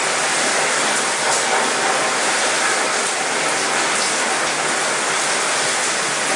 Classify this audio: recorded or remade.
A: recorded